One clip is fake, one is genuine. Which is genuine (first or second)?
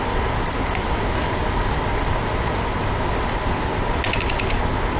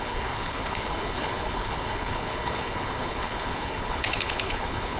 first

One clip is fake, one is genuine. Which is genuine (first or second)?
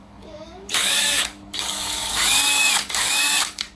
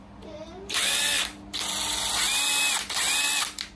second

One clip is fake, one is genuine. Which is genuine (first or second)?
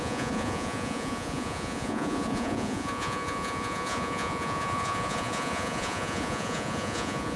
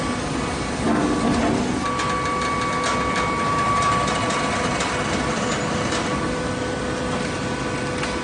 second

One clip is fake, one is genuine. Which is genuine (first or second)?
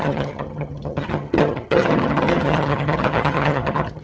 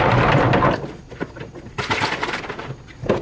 second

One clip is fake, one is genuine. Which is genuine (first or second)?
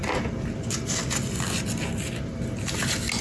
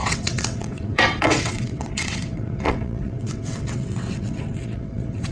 first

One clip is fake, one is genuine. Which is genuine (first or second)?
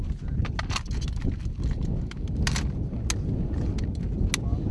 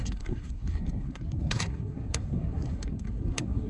first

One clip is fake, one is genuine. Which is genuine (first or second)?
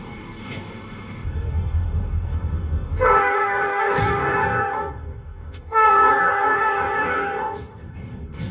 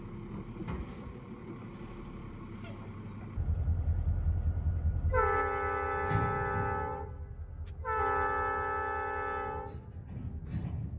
second